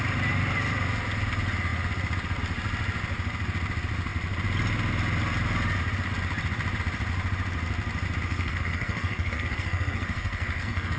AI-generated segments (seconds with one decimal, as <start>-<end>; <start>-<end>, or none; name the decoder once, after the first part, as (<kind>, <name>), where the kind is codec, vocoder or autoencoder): 8.3-11.0 (codec, SNAC)

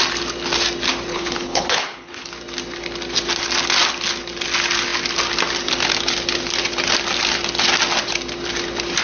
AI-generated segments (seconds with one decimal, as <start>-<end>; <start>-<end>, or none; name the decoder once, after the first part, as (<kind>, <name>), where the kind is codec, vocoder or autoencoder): 1.1-2.3 (codec, HILCodec)

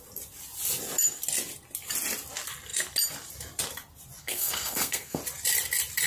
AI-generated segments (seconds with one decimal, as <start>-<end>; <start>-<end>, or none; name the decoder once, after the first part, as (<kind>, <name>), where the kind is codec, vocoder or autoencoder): 4.2-5.2 (codec, SNAC)

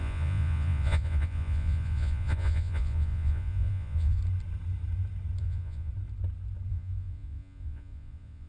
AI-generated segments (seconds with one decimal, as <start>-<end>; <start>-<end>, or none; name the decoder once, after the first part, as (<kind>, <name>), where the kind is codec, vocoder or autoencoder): 0.0-4.2 (vocoder, Vocos); 5.4-5.9; 6.7-8.5